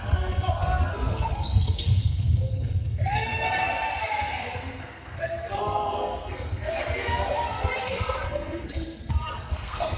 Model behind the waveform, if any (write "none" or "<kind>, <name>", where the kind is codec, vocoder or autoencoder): codec, SNAC